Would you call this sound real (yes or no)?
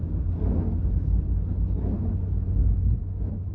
yes